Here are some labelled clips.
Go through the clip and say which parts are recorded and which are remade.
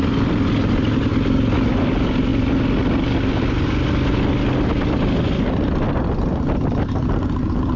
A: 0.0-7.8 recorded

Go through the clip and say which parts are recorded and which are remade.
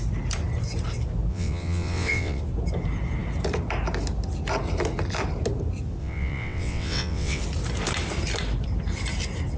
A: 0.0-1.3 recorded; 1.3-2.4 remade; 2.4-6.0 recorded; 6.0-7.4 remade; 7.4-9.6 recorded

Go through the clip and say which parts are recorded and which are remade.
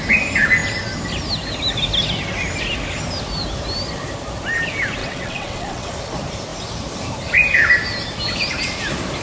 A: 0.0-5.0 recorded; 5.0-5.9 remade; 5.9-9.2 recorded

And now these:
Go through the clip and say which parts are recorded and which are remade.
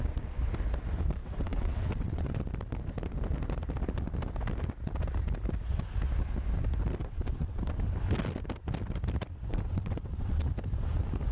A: 0.0-1.2 recorded; 1.2-2.3 remade; 2.3-7.0 recorded; 7.0-7.6 remade; 7.6-9.5 recorded; 9.5-10.5 remade; 10.5-11.3 recorded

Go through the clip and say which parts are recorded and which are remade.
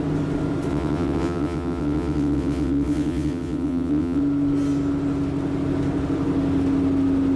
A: 0.0-0.7 recorded; 0.7-4.2 remade; 4.2-7.4 recorded